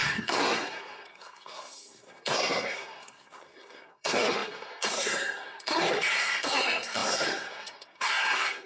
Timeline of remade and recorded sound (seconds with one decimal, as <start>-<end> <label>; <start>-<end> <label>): 0.0-8.7 remade